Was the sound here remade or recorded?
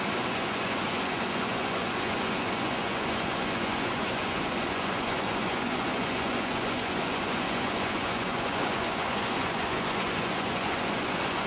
remade